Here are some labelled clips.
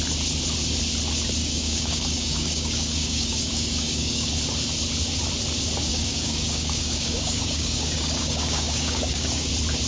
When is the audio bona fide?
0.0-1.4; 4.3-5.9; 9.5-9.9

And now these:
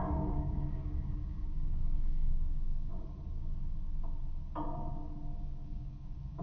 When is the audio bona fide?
2.9-5.4

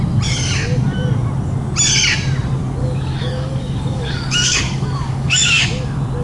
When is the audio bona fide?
0.0-2.8; 5.6-6.2

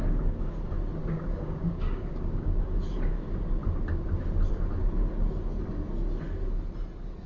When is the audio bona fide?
0.0-1.0; 2.8-7.3